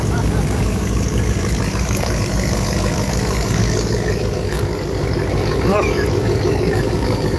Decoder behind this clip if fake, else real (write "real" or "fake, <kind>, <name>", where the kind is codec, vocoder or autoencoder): fake, codec, DAC